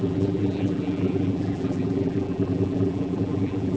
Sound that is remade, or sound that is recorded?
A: remade